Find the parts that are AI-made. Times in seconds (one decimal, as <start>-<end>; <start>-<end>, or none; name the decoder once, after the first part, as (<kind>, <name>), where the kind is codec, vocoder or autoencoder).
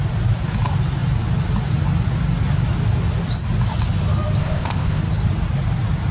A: 4.4-5.0 (codec, ZipCodec)